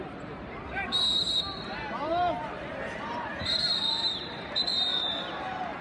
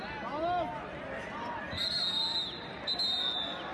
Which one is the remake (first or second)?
first